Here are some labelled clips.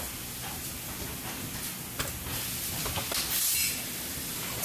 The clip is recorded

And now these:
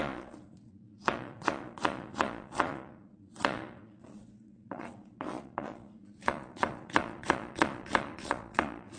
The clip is remade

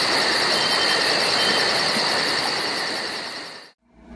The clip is recorded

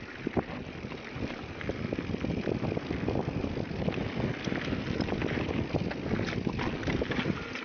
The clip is recorded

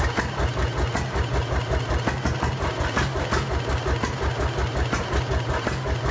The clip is recorded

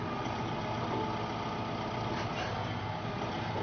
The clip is recorded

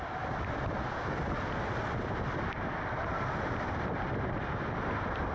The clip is recorded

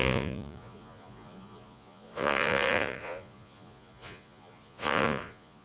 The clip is remade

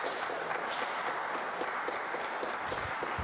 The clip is recorded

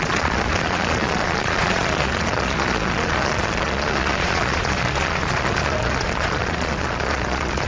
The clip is remade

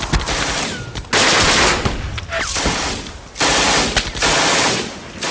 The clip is recorded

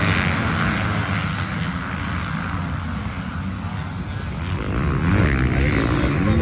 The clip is recorded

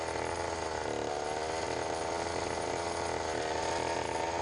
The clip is recorded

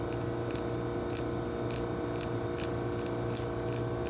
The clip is recorded